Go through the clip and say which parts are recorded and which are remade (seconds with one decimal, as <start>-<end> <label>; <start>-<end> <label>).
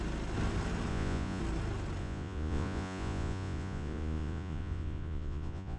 0.0-0.9 recorded; 0.9-1.4 remade; 1.4-2.0 recorded; 2.0-5.8 remade